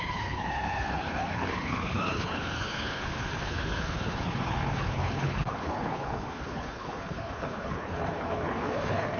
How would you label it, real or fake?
fake